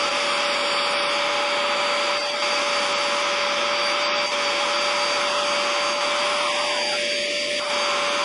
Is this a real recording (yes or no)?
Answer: yes